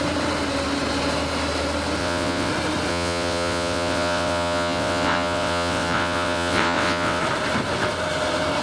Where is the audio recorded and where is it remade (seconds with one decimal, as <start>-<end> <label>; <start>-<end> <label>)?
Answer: 0.0-2.0 recorded; 2.0-2.5 remade; 2.5-2.9 recorded; 2.9-7.2 remade; 7.2-8.6 recorded